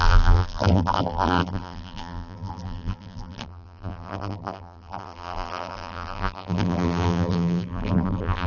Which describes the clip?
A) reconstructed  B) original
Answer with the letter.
A